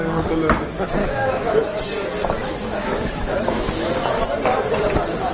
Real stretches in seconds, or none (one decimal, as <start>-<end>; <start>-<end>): 0.0-1.0; 1.8-2.4; 3.9-5.3

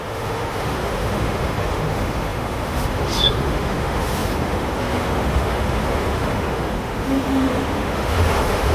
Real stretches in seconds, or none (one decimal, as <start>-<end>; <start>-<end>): none

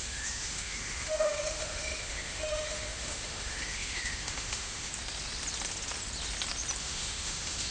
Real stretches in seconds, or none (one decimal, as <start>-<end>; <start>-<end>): 4.9-6.8